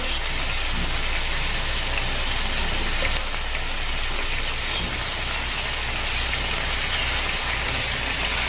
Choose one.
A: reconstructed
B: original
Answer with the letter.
B